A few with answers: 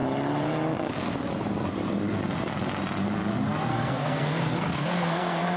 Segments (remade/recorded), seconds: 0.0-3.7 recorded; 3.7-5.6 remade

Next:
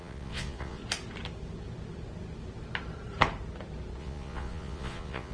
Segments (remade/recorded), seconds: 0.0-0.8 remade; 0.8-4.0 recorded; 4.0-5.3 remade

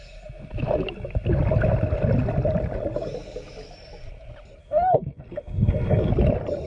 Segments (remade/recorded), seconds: 0.0-4.6 recorded; 4.6-6.1 remade; 6.1-6.7 recorded

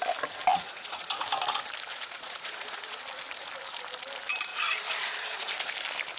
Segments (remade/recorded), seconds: 0.0-0.5 recorded; 0.5-1.2 remade; 1.2-1.9 recorded; 1.9-3.0 remade; 3.0-4.5 recorded; 4.5-5.5 remade; 5.5-6.2 recorded